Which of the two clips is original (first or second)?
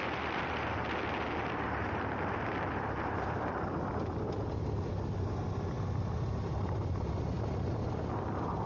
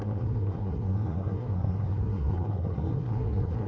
first